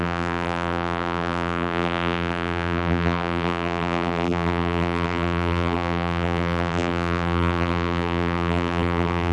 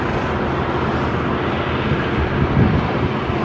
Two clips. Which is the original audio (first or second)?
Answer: second